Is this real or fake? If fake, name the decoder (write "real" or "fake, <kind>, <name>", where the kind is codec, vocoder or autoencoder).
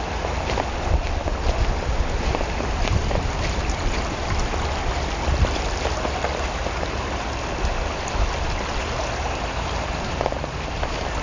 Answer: real